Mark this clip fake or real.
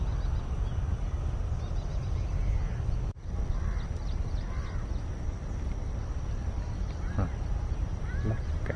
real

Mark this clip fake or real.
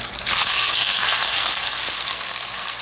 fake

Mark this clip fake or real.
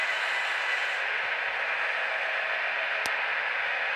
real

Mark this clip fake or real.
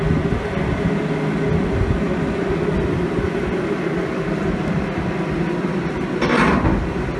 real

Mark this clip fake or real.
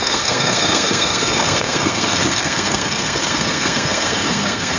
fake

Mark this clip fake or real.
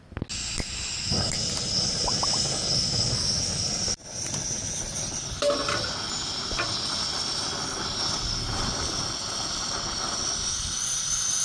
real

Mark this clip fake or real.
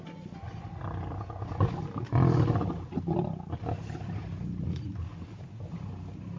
real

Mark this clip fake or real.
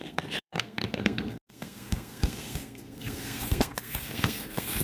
fake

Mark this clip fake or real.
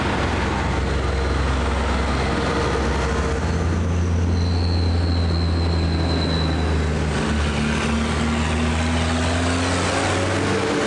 real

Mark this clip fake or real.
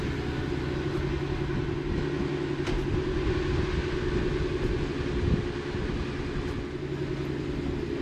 real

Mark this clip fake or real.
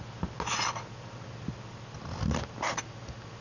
real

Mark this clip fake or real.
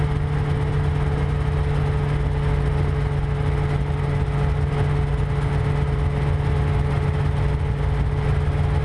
real